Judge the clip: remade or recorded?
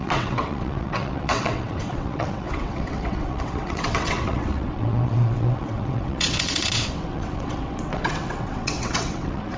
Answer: remade